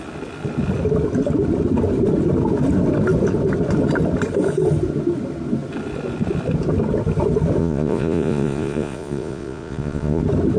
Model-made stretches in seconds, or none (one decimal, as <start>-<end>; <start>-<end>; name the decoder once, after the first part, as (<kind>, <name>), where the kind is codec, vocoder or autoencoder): 7.6-10.2 (vocoder, Vocos)